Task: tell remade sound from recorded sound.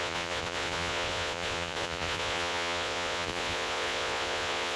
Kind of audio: remade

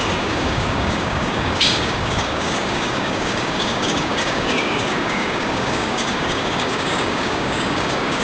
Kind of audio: remade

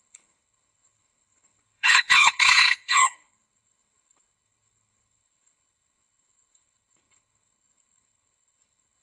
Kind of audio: remade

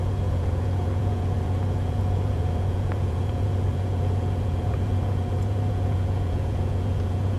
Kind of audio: remade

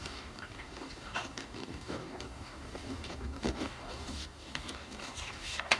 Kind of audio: remade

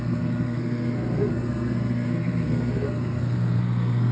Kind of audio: remade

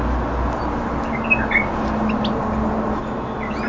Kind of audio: recorded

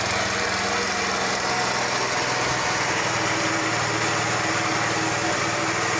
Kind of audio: recorded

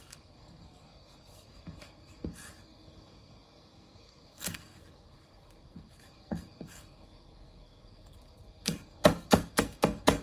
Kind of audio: remade